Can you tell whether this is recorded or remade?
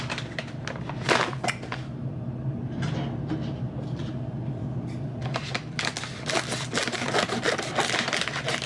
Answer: recorded